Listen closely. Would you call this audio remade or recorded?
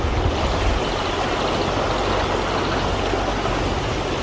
recorded